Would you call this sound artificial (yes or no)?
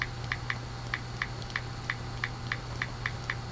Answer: no